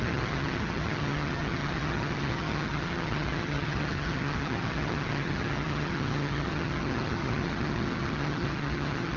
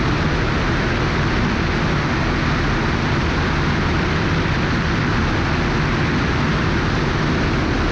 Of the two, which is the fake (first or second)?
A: first